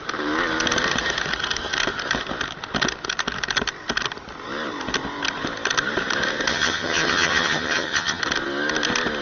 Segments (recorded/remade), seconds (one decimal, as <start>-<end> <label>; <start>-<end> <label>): 0.0-6.5 recorded; 6.5-8.2 remade; 8.2-9.2 recorded